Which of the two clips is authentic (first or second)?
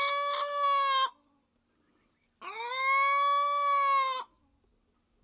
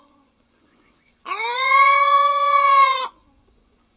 first